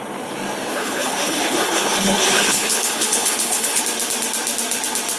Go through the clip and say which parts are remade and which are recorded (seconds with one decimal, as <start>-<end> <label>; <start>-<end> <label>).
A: 0.0-0.7 recorded; 0.7-3.8 remade; 3.8-5.2 recorded